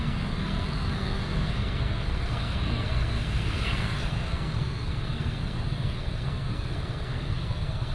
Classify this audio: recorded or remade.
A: remade